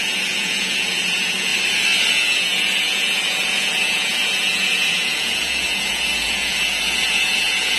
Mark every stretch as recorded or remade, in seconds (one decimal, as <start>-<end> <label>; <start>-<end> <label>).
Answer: 0.0-1.5 remade; 1.5-2.1 recorded; 2.1-7.8 remade